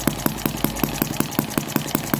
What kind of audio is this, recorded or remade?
recorded